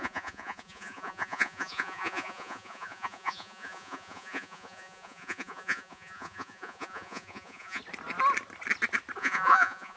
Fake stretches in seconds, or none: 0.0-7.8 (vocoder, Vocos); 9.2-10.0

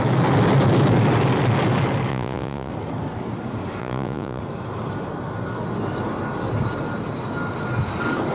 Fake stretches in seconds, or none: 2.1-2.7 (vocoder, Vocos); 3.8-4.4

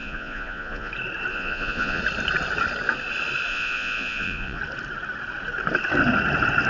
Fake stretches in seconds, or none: 0.0-0.9 (vocoder, Vocos); 1.3-2.0; 3.5-4.6

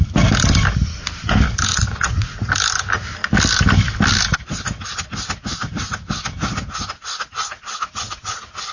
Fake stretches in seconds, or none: 1.7-2.5 (vocoder, Vocos)

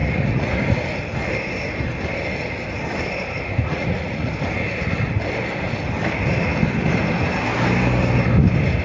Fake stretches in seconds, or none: 0.0-0.5 (vocoder, Vocos); 3.7-4.3

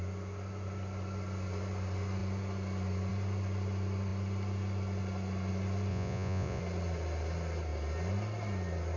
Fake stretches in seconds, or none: 5.9-6.6 (vocoder, Vocos)

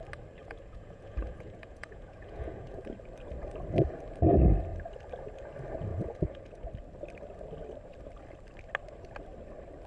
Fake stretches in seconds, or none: 0.4-2.8 (vocoder, Vocos); 5.9-6.7